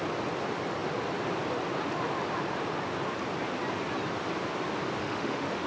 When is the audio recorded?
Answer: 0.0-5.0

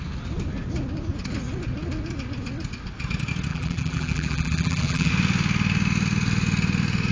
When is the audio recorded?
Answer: 0.0-3.5; 5.1-7.1

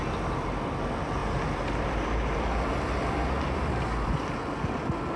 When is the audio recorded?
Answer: 0.0-1.2; 4.3-5.2